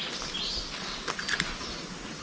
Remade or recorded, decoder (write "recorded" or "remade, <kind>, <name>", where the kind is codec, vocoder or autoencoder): recorded